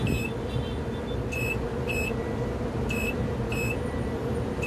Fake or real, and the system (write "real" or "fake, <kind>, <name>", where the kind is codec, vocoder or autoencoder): real